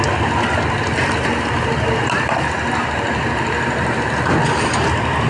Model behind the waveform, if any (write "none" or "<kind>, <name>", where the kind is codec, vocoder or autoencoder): none